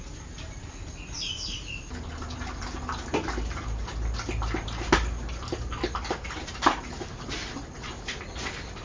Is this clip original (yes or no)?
yes